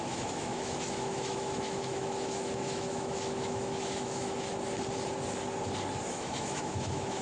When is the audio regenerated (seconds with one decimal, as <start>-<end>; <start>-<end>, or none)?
0.0-4.5; 6.1-7.2